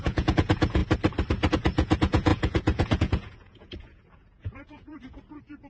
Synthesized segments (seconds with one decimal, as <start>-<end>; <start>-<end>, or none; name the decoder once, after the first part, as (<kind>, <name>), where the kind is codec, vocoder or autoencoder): 0.0-0.8 (vocoder, Vocos); 1.5-5.7